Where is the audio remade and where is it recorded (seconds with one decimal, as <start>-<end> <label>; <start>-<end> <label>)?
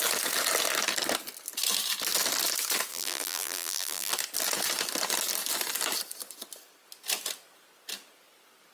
0.0-2.9 recorded; 2.9-4.1 remade; 4.1-8.7 recorded